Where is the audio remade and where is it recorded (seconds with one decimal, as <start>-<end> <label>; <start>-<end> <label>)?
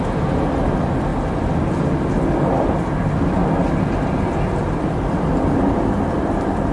0.0-6.7 recorded